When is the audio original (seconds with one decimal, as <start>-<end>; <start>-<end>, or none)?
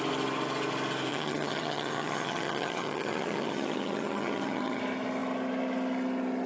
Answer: 0.0-1.1; 4.8-6.5